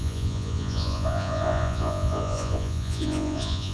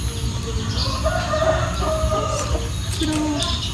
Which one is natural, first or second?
second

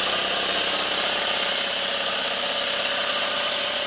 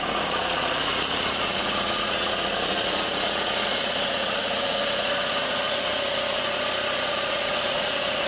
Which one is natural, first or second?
first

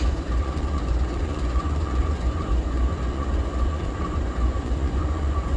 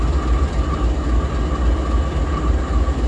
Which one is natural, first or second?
second